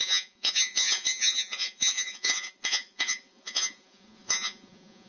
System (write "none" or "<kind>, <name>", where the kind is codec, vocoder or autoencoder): vocoder, Vocos